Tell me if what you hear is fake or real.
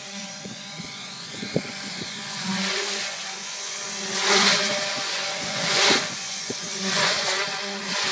fake